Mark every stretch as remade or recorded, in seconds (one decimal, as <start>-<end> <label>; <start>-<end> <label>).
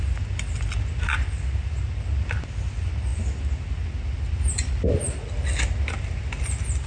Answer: 0.0-6.9 recorded